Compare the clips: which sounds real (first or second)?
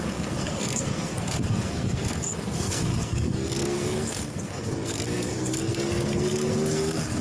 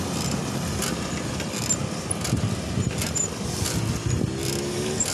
second